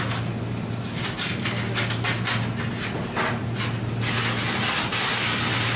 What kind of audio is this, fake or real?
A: real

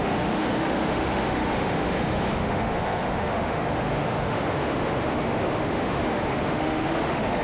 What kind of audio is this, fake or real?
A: fake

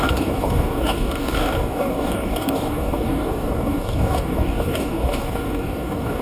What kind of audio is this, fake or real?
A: fake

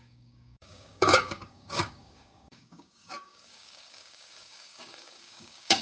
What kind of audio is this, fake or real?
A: fake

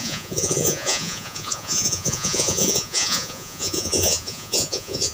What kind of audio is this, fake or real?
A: fake